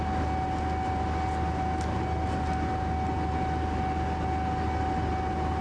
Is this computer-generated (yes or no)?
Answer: no